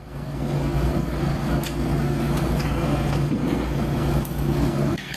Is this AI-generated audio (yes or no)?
yes